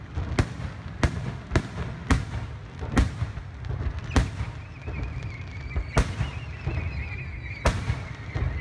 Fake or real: real